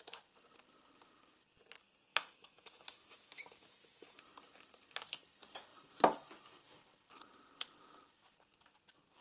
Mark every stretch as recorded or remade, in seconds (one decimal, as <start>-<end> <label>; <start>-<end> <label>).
0.0-2.1 recorded; 2.1-4.2 remade; 4.2-9.2 recorded